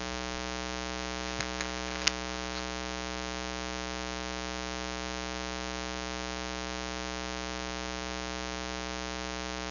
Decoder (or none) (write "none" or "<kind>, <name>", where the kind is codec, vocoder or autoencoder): none